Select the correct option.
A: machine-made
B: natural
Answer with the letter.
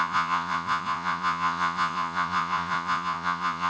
A